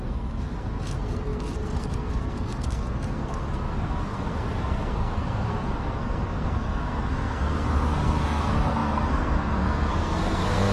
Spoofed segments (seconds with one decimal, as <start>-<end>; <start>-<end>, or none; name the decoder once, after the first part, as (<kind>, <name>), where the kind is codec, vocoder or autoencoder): 0.0-10.7 (codec, SNAC)